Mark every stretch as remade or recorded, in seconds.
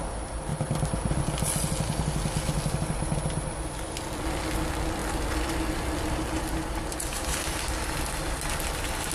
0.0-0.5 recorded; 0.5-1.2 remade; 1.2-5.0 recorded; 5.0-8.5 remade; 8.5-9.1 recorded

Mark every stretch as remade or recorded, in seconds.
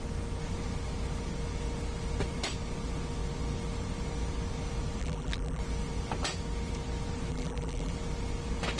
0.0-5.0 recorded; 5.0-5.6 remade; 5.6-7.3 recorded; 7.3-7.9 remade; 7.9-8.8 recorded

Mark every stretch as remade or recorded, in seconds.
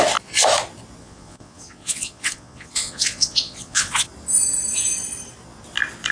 0.0-1.0 recorded; 1.0-4.1 remade; 4.1-6.1 recorded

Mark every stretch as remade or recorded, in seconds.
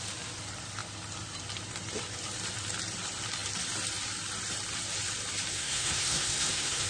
0.0-5.5 recorded; 5.5-6.9 remade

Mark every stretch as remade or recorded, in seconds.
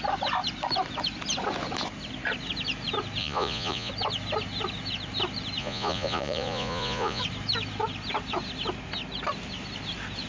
0.0-3.2 recorded; 3.2-3.9 remade; 3.9-5.6 recorded; 5.6-7.2 remade; 7.2-10.3 recorded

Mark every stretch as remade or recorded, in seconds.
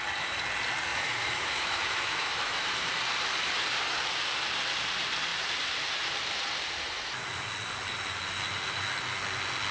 0.0-0.9 recorded; 0.9-2.9 remade; 2.9-9.7 recorded